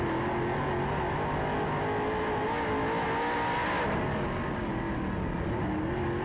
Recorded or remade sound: recorded